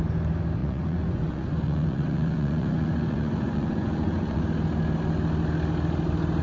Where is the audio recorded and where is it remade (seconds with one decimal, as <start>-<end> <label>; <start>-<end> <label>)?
0.0-0.6 recorded; 0.6-4.4 remade; 4.4-6.4 recorded

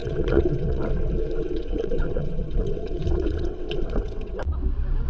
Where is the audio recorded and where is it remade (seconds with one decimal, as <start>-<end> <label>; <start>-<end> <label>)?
0.0-0.8 remade; 0.8-1.4 recorded; 1.4-4.5 remade; 4.5-5.1 recorded